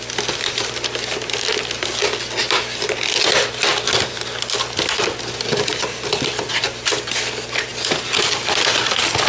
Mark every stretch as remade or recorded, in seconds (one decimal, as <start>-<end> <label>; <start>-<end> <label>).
0.0-9.3 recorded